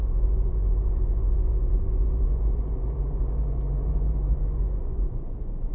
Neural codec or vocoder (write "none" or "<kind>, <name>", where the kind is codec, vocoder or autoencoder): vocoder, Vocos